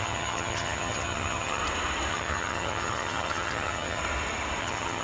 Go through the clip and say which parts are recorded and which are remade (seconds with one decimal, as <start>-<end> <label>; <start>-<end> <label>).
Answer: 0.0-1.6 remade; 1.6-2.1 recorded; 2.1-4.0 remade; 4.0-4.6 recorded; 4.6-5.0 remade